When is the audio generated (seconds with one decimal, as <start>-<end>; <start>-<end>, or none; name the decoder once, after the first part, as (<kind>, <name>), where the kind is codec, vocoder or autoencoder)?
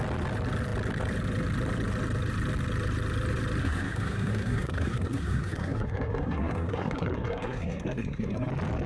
3.6-8.5 (codec, SNAC)